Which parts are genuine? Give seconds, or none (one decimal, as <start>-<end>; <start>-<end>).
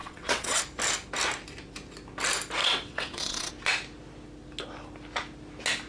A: 0.6-2.6; 3.5-5.9